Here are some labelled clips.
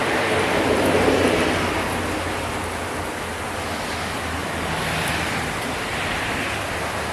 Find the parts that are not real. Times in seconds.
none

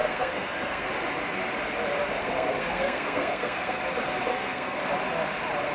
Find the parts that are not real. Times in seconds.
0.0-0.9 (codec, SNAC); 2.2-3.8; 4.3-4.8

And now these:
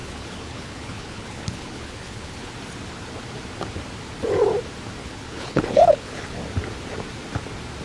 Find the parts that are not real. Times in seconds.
0.0-2.5 (codec, HILCodec); 5.0-6.4

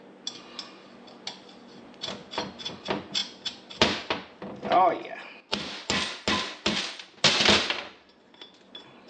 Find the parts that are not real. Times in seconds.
3.2-4.4 (vocoder, BigVGAN v2)

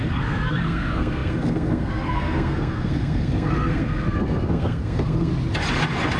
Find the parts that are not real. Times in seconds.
0.0-5.3 (codec, SNAC)

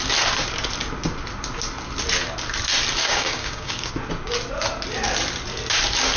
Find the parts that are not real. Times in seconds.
3.0-3.9 (codec, DAC)

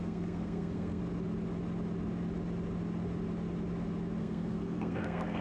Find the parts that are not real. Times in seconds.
0.0-1.0 (codec, SNAC); 4.2-5.4